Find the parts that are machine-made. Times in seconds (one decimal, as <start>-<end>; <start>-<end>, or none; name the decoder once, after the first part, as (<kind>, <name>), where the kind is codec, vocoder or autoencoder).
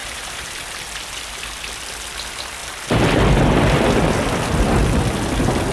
0.0-0.5 (vocoder, BigVGAN v2)